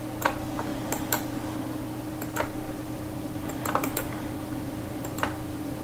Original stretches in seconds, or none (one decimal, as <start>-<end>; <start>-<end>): 0.0-0.7; 2.1-3.5; 4.0-5.8